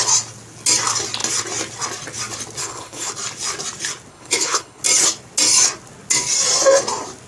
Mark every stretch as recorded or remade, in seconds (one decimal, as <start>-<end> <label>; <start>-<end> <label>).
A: 0.0-2.6 recorded; 2.6-3.1 remade; 3.1-4.1 recorded; 4.1-4.8 remade; 4.8-7.3 recorded